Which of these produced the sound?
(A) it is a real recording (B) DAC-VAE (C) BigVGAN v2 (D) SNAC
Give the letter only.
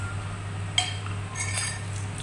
A